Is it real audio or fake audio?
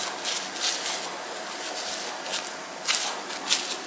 real